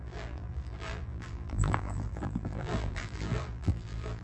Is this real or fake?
fake